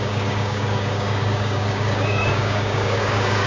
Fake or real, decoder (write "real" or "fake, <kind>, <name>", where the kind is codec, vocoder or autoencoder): fake, codec, DAC